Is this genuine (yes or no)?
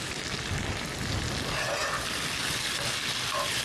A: yes